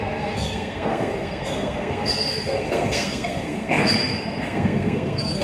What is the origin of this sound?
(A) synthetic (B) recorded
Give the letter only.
A